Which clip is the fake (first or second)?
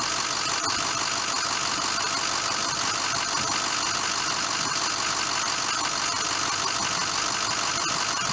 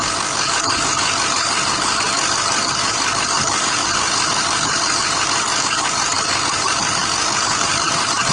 second